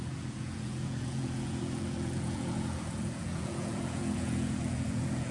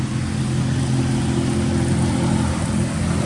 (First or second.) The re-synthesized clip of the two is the first